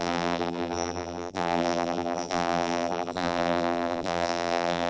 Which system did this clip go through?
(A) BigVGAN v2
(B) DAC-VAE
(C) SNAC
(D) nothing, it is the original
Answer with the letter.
A